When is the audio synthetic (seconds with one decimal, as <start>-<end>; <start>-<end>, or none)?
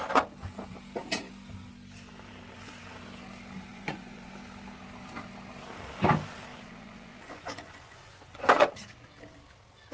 3.7-4.3; 6.5-8.7